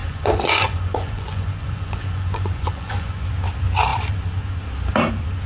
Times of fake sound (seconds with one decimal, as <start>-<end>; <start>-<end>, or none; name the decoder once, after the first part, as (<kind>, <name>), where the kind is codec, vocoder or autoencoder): 0.0-3.3 (vocoder, Vocos)